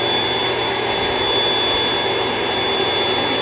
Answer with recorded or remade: recorded